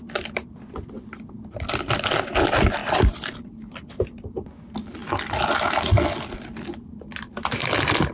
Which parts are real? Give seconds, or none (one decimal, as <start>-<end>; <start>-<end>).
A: 0.0-8.1